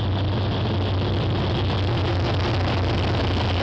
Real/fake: real